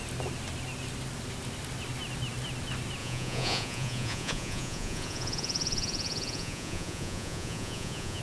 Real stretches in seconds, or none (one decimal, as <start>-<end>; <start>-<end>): 0.0-3.0